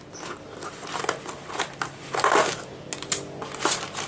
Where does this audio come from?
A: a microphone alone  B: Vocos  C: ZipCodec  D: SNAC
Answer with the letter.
A